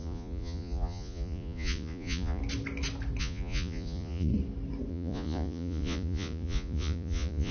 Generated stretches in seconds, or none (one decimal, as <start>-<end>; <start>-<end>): 0.0-2.4; 3.2-4.3; 4.9-7.5